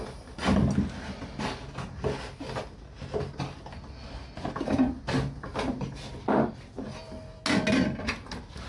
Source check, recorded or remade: recorded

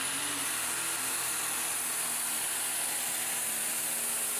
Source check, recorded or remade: recorded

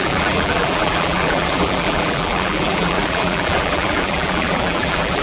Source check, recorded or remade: remade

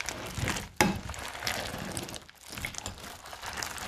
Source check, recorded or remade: recorded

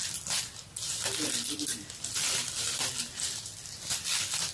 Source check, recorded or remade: recorded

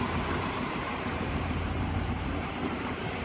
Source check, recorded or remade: remade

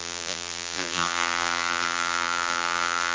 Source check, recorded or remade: remade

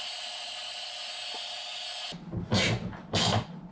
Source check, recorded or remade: recorded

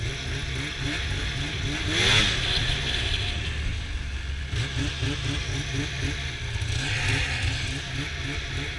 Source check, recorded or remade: recorded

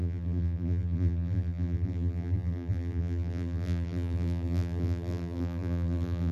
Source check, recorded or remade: remade